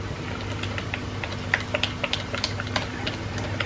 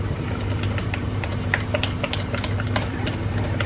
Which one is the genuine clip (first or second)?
first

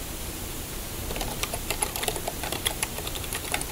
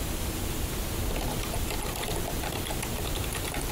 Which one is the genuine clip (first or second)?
second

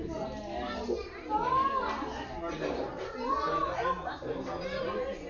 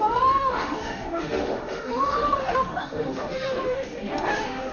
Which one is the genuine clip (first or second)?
first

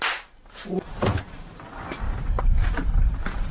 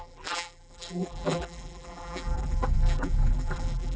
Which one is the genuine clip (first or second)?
first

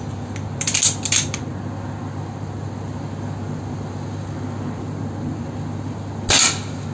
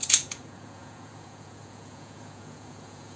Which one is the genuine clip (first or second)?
first